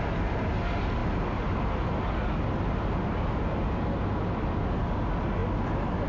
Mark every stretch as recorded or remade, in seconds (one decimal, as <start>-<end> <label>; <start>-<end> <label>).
0.0-6.1 recorded